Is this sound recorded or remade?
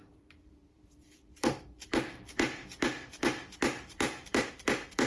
remade